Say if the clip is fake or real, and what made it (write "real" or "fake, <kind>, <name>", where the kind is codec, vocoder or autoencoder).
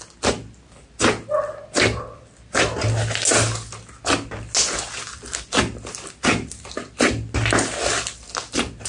real